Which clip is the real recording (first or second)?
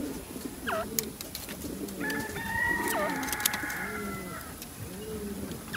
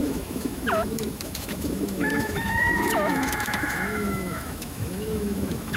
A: first